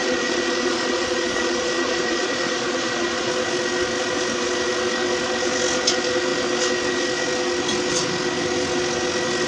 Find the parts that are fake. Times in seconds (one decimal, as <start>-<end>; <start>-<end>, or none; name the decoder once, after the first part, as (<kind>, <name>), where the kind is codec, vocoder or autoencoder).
0.0-3.3 (vocoder, Vocos)